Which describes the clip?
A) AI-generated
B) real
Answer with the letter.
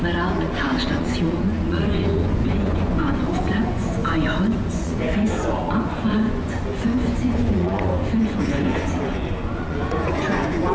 A